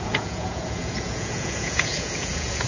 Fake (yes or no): yes